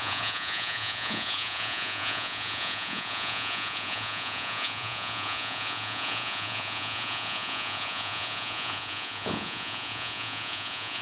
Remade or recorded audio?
remade